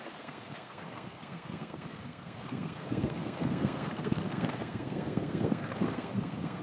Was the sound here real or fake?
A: fake